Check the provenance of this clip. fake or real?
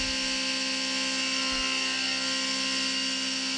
real